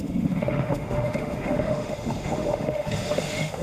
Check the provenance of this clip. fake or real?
fake